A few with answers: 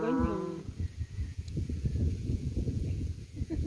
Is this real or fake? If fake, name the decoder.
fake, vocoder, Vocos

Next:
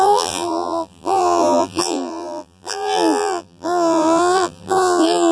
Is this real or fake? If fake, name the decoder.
fake, vocoder, BigVGAN v2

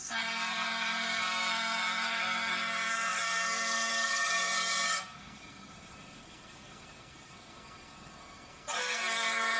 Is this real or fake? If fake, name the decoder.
fake, codec, SNAC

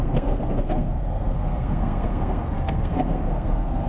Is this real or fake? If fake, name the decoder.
fake, codec, SNAC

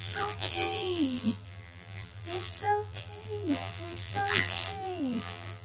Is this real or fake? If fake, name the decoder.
fake, vocoder, BigVGAN v2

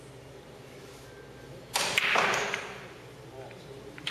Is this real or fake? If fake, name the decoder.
real